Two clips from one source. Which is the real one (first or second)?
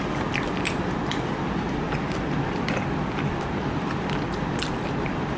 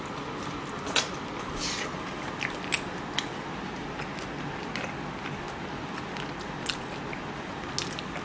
second